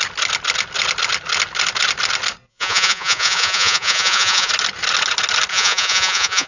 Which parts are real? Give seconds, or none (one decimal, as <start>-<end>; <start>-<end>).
0.0-2.5; 4.5-5.5

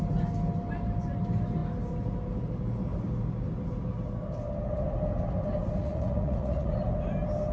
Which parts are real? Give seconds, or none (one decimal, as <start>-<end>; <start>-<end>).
0.0-5.8; 6.7-7.5

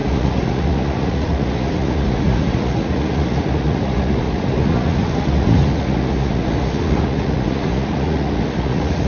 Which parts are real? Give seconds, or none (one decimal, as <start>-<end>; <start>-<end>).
none

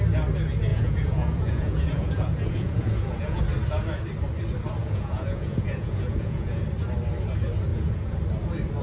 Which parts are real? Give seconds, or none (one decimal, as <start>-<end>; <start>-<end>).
0.0-0.7; 3.4-4.8; 6.6-7.7; 8.2-8.8

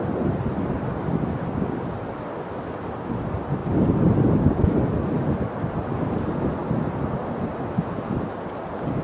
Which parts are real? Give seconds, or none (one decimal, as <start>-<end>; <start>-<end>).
0.0-9.0

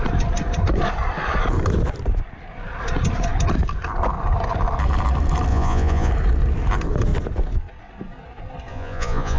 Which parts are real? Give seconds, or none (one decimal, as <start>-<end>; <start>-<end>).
0.0-5.5; 6.1-8.7

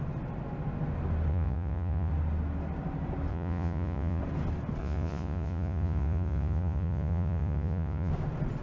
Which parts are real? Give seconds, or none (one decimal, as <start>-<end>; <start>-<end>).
0.0-1.3; 2.1-3.3; 4.2-4.8; 8.1-8.6

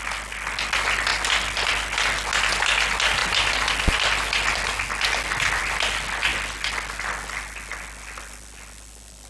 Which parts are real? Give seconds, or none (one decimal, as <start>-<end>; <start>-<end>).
0.0-9.3